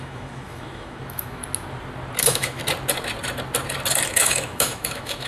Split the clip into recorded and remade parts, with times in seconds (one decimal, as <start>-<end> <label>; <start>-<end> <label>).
0.0-1.4 remade; 1.4-2.2 recorded; 2.2-2.6 remade; 2.6-4.1 recorded; 4.1-5.3 remade